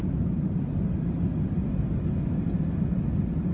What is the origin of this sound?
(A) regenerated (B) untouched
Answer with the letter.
B